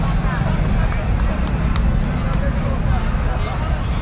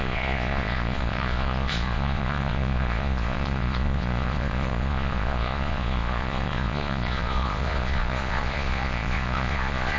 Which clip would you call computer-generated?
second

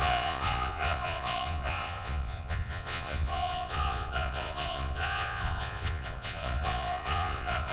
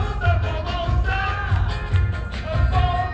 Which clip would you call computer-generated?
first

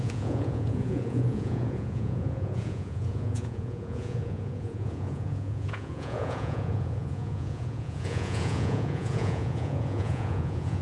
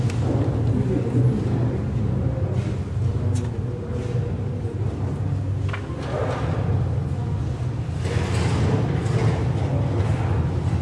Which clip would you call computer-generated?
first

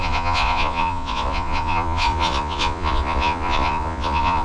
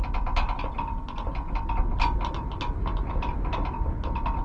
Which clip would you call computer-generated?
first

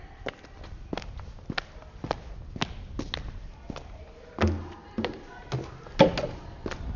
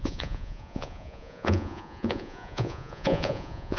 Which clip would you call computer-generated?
second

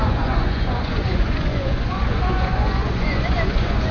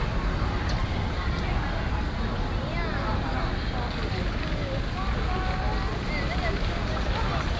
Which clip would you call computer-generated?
first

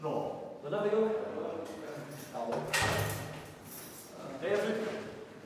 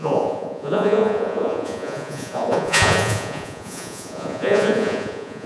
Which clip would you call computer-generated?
second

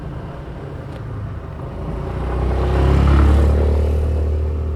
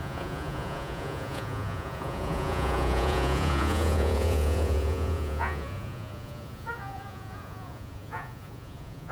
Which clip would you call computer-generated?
second